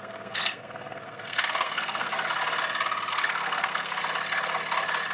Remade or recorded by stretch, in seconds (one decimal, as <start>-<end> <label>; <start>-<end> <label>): 0.0-2.1 remade; 2.1-3.1 recorded; 3.1-4.0 remade; 4.0-5.1 recorded